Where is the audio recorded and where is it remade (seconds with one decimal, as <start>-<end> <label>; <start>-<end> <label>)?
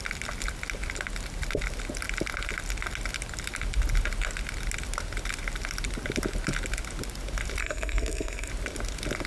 0.0-7.6 recorded; 7.6-8.5 remade; 8.5-9.3 recorded